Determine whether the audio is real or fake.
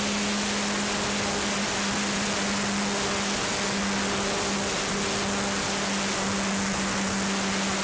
real